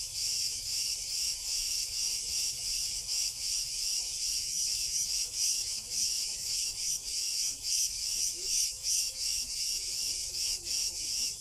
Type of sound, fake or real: fake